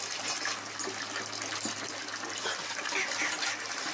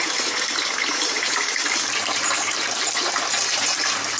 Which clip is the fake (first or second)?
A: second